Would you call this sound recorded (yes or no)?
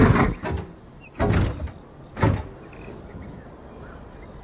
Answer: yes